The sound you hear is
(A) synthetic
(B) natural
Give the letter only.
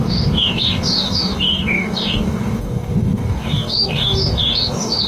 A